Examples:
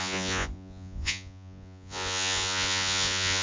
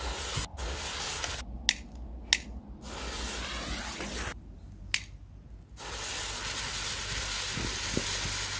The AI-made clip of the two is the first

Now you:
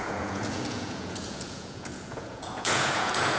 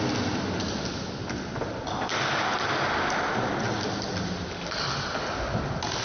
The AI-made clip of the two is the first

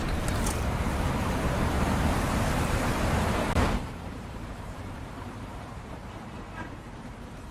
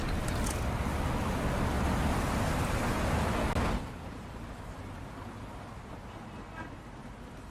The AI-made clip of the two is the first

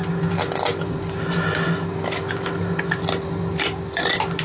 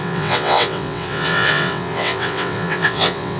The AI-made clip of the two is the second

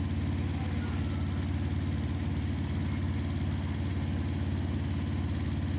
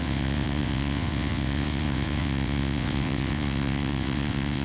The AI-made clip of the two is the second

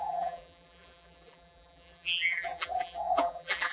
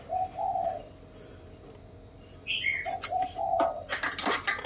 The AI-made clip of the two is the first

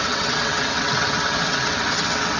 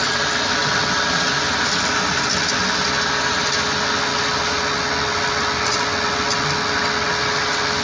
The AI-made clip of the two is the first